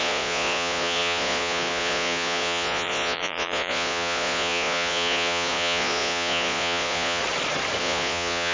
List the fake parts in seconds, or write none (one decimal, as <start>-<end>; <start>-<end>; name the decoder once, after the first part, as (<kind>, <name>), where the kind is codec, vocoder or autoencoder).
0.0-7.2 (vocoder, Vocos); 7.8-8.5